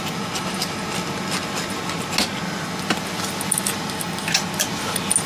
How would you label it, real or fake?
real